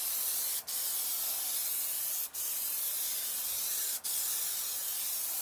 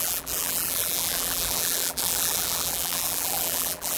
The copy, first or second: second